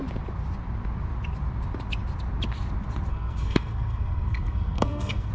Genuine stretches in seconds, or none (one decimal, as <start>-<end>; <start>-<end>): 0.0-3.1